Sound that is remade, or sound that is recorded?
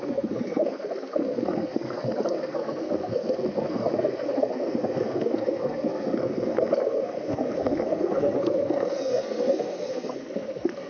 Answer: remade